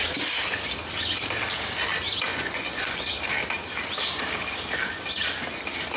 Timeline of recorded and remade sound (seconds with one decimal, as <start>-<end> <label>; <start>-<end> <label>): 0.0-2.3 recorded; 2.3-3.1 remade; 3.1-6.0 recorded